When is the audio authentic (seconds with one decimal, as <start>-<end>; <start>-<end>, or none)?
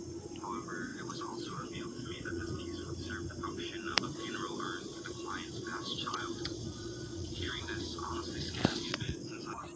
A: 0.0-0.9; 2.6-5.7; 7.6-8.6; 9.3-9.8